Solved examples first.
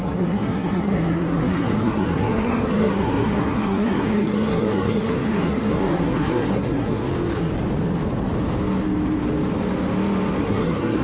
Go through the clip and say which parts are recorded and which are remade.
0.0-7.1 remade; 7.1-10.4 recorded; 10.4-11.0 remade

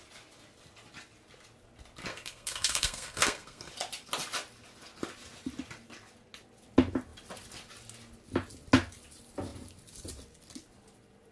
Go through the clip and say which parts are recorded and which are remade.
0.0-2.1 recorded; 2.1-3.7 remade; 3.7-11.3 recorded

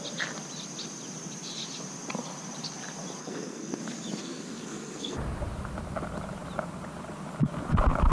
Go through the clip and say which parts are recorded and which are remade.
0.0-3.2 recorded; 3.2-3.8 remade; 3.8-4.2 recorded; 4.2-5.2 remade; 5.2-8.1 recorded

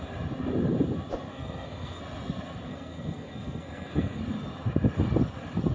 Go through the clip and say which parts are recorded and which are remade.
0.0-1.3 recorded; 1.3-2.0 remade; 2.0-2.7 recorded; 2.7-4.2 remade; 4.2-5.7 recorded

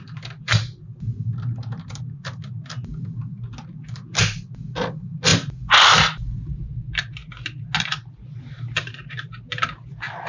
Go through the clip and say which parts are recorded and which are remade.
0.0-10.3 recorded

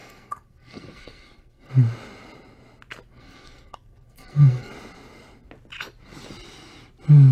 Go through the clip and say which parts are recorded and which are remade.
0.0-1.7 remade; 1.7-3.1 recorded; 3.1-4.7 remade; 4.7-7.3 recorded